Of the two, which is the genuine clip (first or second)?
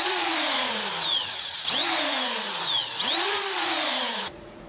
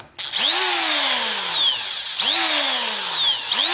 second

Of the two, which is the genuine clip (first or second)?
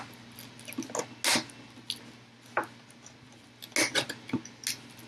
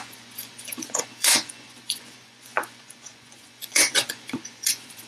first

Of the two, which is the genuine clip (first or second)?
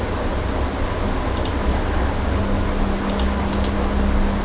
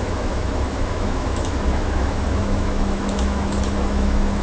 first